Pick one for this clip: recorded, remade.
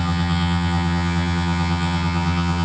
remade